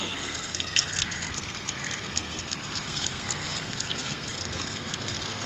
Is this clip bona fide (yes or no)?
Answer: no